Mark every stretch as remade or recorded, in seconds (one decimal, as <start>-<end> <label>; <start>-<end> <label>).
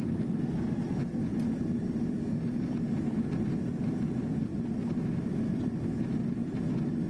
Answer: 0.0-7.1 recorded